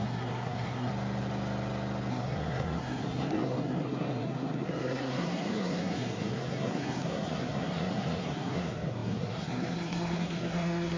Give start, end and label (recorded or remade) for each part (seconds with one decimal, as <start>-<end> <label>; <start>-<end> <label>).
0.0-0.9 remade; 0.9-2.1 recorded; 2.1-11.0 remade